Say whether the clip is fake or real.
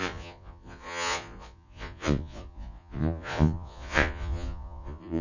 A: fake